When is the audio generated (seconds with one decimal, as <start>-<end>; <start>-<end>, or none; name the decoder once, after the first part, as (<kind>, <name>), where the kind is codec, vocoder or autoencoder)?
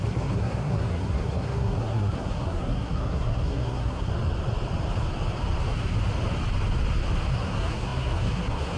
0.0-4.1 (codec, SNAC); 7.3-8.8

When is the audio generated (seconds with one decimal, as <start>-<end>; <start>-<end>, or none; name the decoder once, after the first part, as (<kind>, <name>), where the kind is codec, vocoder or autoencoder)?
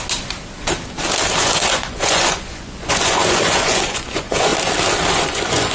1.4-4.5 (vocoder, Vocos); 5.1-5.7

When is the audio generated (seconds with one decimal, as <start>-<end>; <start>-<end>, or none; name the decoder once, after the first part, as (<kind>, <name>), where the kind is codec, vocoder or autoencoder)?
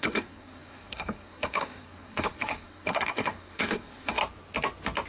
0.0-4.2 (codec, SNAC)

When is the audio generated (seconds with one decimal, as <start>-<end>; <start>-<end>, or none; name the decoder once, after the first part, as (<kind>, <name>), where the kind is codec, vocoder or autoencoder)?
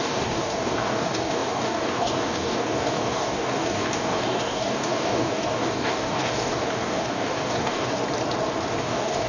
0.0-8.0 (codec, DAC); 8.8-9.3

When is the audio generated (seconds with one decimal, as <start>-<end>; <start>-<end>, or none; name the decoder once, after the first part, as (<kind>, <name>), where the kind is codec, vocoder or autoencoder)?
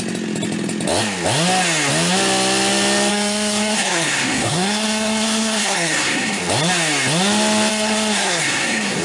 3.1-6.4 (codec, SNAC); 7.7-9.0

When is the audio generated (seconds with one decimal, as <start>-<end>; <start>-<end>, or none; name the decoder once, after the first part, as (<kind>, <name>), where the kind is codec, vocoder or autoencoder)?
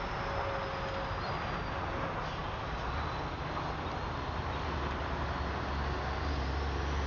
none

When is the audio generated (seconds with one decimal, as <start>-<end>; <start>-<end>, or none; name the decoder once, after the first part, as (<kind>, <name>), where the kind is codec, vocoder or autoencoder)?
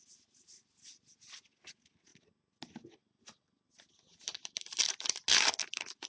none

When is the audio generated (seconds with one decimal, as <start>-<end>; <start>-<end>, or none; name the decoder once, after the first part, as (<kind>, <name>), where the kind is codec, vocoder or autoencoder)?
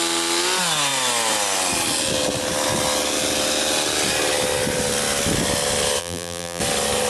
6.0-6.6 (vocoder, BigVGAN v2)